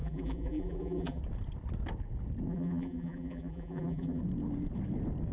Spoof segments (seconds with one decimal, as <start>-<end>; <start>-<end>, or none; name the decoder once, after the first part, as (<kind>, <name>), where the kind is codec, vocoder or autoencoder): 0.0-1.2 (vocoder, BigVGAN v2); 2.5-4.2